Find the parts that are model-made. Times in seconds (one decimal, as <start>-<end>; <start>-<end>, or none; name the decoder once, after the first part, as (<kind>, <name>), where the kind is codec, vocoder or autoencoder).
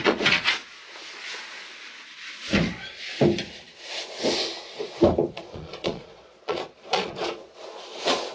0.0-0.6 (vocoder, Vocos); 5.3-8.3